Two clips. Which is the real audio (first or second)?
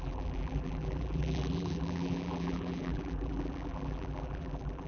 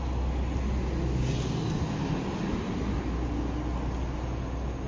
second